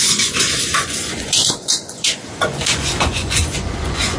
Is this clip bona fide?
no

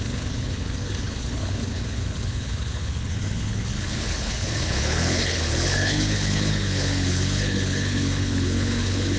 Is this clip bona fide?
no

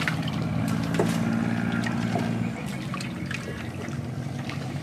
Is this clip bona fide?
yes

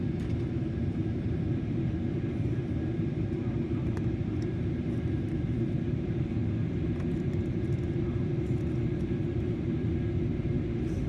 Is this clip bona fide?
no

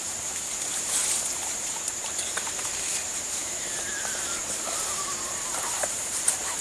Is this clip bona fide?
no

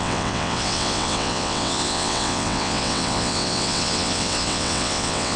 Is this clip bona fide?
no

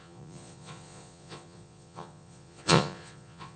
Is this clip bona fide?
no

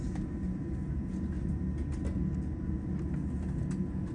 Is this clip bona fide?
yes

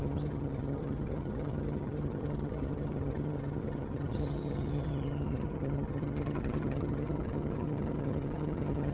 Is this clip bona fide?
no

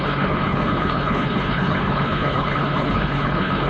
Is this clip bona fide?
no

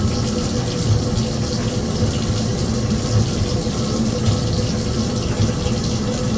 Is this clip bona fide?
yes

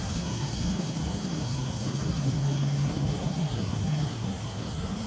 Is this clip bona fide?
no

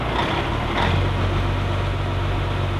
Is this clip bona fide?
yes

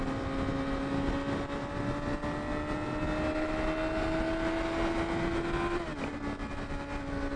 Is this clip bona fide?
yes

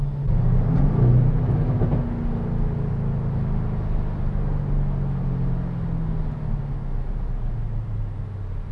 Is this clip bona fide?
yes